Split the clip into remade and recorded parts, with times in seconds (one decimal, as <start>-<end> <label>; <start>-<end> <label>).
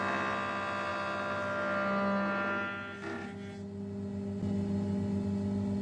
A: 0.0-5.8 recorded